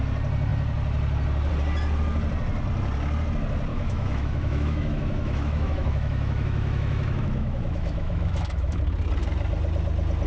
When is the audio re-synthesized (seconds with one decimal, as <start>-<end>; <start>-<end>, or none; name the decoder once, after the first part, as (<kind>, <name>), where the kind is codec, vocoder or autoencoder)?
3.7-8.8 (autoencoder, DAC-VAE)